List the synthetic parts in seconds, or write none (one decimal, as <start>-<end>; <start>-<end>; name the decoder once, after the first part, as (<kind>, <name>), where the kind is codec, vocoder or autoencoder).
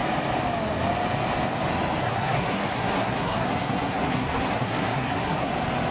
2.0-5.5 (codec, SNAC)